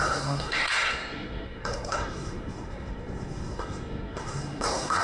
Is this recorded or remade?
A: remade